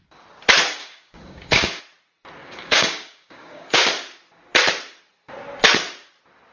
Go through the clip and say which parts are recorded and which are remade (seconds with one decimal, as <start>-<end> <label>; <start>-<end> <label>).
0.0-0.8 recorded; 0.8-1.8 remade; 1.8-2.4 recorded; 2.4-3.9 remade; 3.9-6.5 recorded